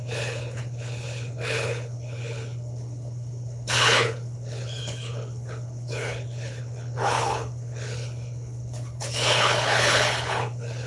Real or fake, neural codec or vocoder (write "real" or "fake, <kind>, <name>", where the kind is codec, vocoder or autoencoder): fake, codec, HILCodec